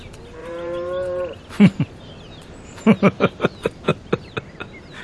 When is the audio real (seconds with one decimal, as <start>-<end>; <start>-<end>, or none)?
0.0-0.4; 1.4-5.0